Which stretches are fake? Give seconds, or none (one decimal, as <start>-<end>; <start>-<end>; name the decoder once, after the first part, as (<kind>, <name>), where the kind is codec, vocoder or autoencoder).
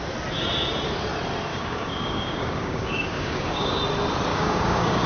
1.5-3.8 (codec, DAC); 4.3-5.1